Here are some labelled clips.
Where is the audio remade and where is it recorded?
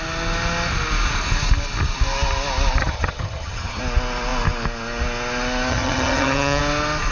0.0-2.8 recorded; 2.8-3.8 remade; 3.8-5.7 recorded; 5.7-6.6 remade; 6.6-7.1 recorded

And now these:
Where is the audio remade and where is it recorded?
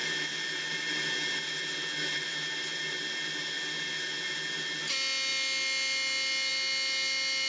0.0-7.5 recorded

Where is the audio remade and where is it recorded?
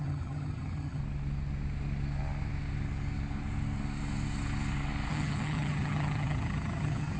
0.0-1.0 remade; 1.0-5.1 recorded; 5.1-7.2 remade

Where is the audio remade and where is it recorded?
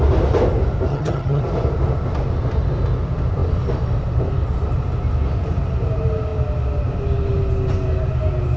0.0-0.9 recorded; 0.9-1.4 remade; 1.4-8.6 recorded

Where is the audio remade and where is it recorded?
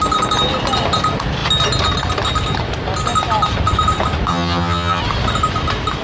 0.0-4.3 recorded; 4.3-5.0 remade; 5.0-6.0 recorded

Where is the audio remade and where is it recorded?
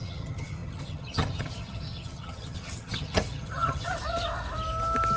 0.0-3.9 remade; 3.9-5.2 recorded